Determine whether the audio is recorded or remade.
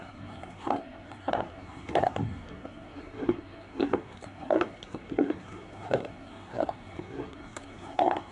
remade